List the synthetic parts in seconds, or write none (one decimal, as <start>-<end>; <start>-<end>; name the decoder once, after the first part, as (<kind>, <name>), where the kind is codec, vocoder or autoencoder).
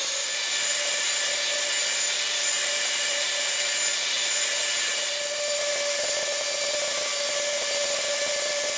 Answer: none